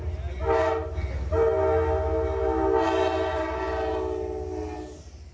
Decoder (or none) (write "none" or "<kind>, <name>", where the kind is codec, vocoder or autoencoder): none